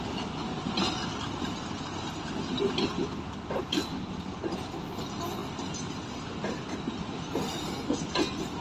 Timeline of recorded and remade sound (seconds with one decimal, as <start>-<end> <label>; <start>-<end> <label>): 0.0-8.6 recorded